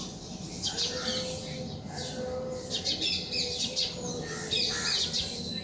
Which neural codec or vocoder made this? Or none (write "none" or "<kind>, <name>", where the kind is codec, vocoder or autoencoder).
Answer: none